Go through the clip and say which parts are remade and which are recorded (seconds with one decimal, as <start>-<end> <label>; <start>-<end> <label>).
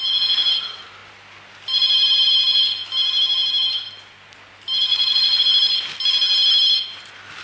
0.0-4.9 recorded; 4.9-5.4 remade; 5.4-7.4 recorded